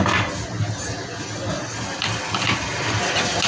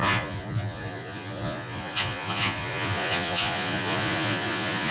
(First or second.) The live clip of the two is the first